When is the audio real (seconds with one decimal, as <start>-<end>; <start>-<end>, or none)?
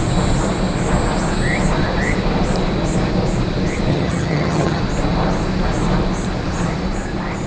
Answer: 0.0-3.9; 4.8-7.5